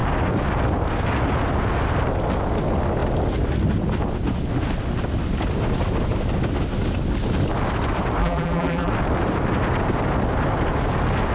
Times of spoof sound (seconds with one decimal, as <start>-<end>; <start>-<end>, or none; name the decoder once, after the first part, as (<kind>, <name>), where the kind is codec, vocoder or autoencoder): 8.2-8.9 (vocoder, BigVGAN v2)